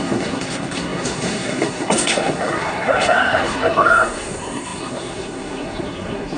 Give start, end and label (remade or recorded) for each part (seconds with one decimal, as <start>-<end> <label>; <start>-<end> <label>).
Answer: 0.0-6.4 remade